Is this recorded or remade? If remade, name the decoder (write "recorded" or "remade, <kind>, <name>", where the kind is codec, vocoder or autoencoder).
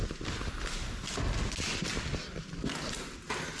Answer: recorded